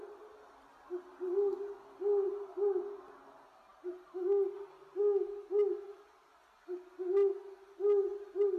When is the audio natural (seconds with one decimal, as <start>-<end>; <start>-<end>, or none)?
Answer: 0.0-8.6